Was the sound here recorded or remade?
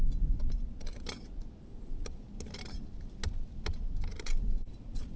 recorded